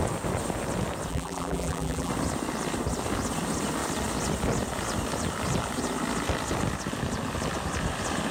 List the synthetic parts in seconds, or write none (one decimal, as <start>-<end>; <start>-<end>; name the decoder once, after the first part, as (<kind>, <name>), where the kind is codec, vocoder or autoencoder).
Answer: 1.1-2.1 (vocoder, BigVGAN v2)